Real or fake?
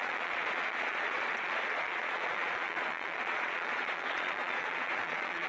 fake